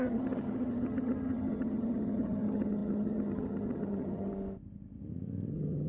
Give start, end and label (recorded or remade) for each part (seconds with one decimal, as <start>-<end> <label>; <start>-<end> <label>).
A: 0.0-4.3 remade; 4.3-5.5 recorded; 5.5-5.9 remade